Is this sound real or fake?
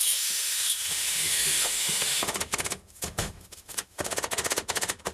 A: fake